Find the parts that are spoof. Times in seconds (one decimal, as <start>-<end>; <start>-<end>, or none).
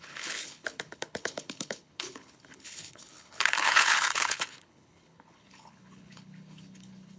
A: 0.0-7.2